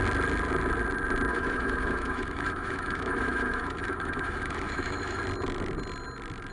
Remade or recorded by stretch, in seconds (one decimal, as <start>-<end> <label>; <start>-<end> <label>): 0.0-1.3 recorded; 1.3-5.2 remade; 5.2-6.5 recorded